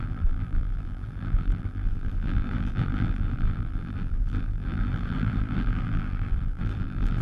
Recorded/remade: remade